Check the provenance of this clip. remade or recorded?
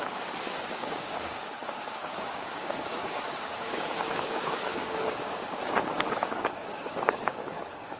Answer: remade